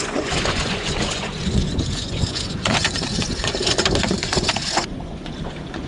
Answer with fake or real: fake